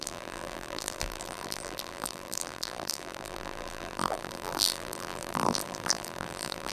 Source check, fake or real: fake